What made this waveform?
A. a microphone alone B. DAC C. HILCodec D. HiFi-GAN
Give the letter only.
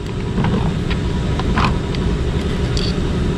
A